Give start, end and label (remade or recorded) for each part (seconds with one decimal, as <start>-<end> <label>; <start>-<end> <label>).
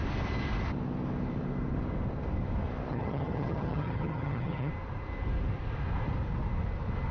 0.0-2.9 recorded; 2.9-4.7 remade; 4.7-7.1 recorded